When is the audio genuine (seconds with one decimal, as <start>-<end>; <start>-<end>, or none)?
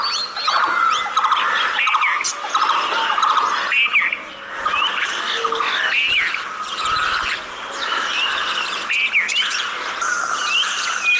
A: 0.0-11.2